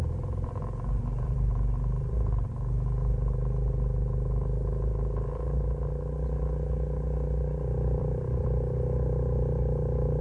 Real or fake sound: fake